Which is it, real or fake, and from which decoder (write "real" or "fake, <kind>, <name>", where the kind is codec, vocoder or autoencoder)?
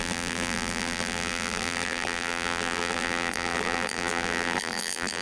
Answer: fake, vocoder, BigVGAN v2